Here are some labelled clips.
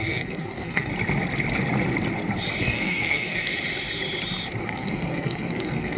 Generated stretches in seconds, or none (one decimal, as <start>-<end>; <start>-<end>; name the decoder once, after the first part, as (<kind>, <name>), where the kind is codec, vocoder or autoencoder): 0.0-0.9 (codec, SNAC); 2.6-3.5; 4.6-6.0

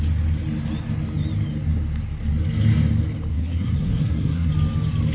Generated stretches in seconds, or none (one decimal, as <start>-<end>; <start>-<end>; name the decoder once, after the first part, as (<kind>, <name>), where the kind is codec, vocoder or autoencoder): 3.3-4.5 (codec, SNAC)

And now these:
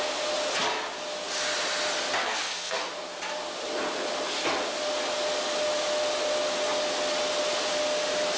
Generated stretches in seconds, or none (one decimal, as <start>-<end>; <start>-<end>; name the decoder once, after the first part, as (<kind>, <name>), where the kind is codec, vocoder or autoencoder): 2.2-2.8 (codec, SNAC)

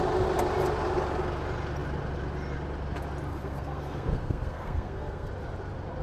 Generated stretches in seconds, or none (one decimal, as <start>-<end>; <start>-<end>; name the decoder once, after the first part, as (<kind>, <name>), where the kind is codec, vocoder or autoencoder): 3.3-5.3 (codec, SNAC)

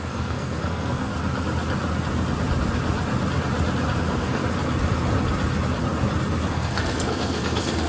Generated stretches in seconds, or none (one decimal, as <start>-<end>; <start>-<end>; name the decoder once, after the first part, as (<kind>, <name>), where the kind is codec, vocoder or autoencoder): 0.0-1.1 (codec, SNAC); 4.0-4.4; 6.5-7.9

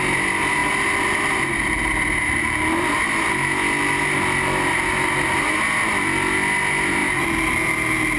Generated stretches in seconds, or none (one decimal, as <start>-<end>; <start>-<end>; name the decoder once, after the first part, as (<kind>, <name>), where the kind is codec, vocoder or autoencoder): none